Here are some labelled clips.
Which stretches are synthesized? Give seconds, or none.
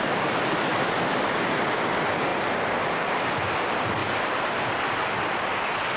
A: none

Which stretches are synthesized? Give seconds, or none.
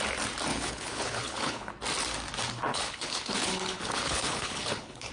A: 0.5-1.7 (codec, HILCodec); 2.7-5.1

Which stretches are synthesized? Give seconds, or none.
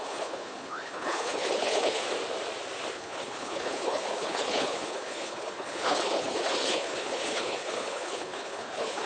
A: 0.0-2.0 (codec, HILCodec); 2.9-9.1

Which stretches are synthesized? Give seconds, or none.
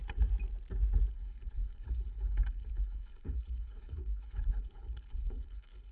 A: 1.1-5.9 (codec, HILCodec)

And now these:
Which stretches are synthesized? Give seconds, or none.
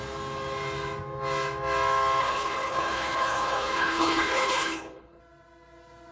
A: 2.2-5.2 (codec, HILCodec)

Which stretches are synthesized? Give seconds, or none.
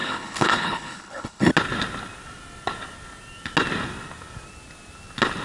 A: 0.0-1.5 (codec, HILCodec)